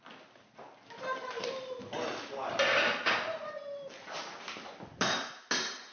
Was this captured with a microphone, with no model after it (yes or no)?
yes